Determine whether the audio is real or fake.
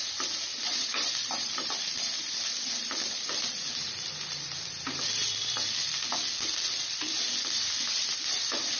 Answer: fake